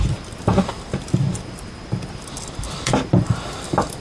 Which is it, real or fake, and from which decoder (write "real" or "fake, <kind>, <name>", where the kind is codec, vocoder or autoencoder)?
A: real